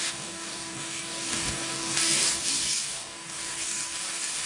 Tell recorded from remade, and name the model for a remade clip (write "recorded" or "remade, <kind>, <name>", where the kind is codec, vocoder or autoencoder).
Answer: remade, codec, DAC